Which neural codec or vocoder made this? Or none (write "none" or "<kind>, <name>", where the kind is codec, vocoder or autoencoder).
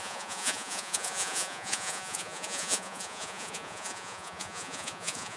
vocoder, Vocos